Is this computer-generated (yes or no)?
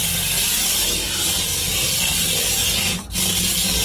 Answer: no